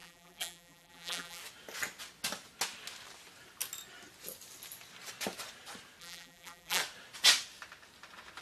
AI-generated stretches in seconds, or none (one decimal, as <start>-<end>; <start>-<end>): 0.0-1.4; 6.0-6.8